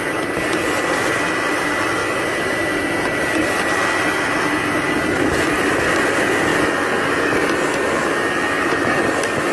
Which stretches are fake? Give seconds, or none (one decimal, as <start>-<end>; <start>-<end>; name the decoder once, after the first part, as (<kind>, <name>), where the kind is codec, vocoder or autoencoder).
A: none